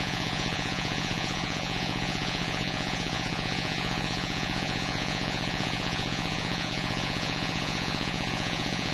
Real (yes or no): no